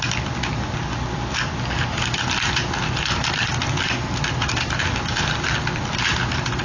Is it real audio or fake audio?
real